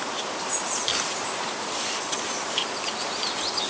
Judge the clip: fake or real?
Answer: real